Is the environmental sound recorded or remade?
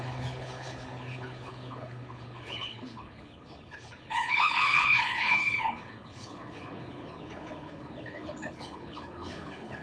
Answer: remade